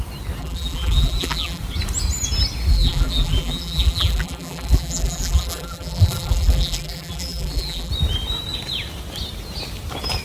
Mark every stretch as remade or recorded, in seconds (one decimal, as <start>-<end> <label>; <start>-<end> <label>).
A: 0.0-0.4 recorded; 0.4-1.6 remade; 1.6-2.7 recorded; 2.7-7.9 remade; 7.9-10.2 recorded